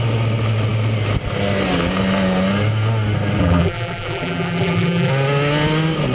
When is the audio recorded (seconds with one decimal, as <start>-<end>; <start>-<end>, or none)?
0.0-3.4; 5.1-6.1